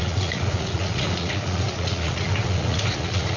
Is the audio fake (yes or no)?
yes